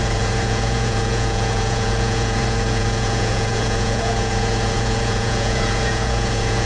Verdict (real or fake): fake